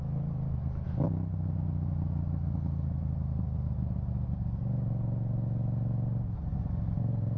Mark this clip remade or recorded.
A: recorded